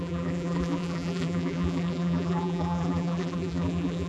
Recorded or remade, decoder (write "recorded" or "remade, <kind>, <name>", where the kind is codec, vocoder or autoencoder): remade, vocoder, BigVGAN v2